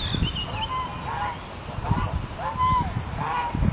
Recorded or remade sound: recorded